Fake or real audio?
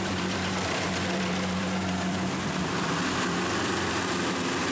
fake